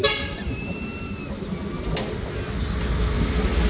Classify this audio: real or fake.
real